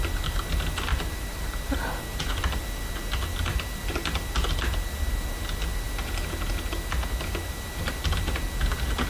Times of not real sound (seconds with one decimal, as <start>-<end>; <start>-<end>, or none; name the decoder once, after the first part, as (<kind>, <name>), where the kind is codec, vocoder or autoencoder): 0.9-2.6 (vocoder, BigVGAN v2)